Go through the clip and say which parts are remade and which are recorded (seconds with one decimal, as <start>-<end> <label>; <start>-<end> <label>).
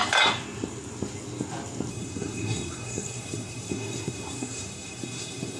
0.0-1.9 recorded; 1.9-5.6 remade